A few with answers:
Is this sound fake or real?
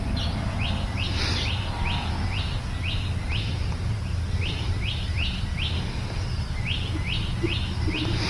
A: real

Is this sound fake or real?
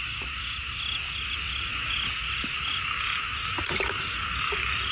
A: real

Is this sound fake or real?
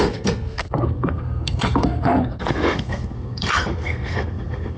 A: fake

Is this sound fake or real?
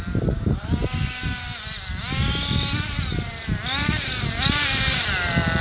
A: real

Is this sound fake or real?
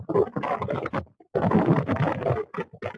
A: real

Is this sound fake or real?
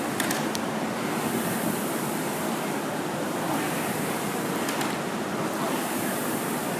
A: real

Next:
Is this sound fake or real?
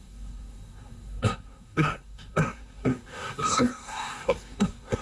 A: fake